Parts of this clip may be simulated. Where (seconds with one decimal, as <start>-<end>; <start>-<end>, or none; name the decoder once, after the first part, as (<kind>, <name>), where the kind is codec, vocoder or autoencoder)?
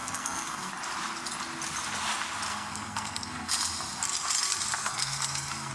0.0-0.7 (codec, SNAC); 2.5-3.5; 4.8-5.7